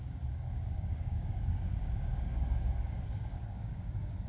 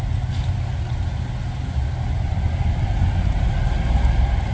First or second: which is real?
second